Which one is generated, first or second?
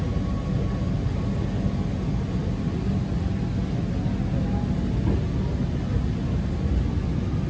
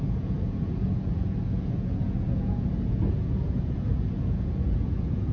second